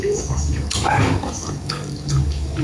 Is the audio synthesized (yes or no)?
yes